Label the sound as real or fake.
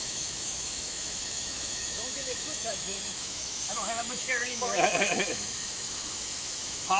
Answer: fake